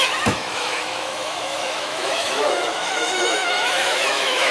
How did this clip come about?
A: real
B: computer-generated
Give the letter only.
B